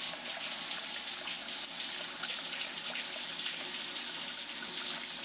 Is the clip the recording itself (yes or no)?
yes